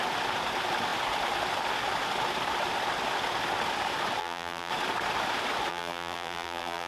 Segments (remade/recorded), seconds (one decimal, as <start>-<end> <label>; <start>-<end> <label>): 0.0-4.2 recorded; 4.2-4.7 remade; 4.7-5.7 recorded; 5.7-6.9 remade